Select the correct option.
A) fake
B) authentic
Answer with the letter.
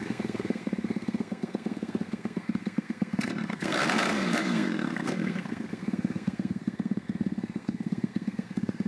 A